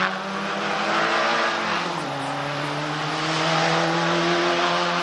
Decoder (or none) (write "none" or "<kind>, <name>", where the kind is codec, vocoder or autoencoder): none